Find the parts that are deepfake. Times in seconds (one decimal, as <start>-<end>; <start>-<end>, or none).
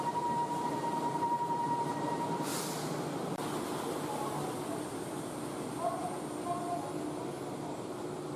0.0-2.5; 7.5-8.4